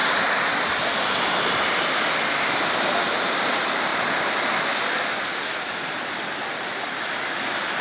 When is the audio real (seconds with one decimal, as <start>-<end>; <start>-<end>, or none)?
2.3-7.8